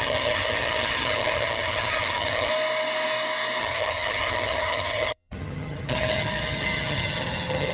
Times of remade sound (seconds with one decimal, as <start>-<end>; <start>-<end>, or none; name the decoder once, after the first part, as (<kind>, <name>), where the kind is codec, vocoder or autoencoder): 0.0-2.5 (vocoder, HiFi-GAN); 3.6-7.7